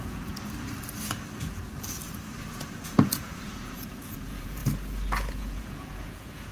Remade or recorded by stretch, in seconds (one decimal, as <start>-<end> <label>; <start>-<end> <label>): 0.0-0.4 remade; 0.4-2.5 recorded; 2.5-4.6 remade; 4.6-5.3 recorded; 5.3-6.5 remade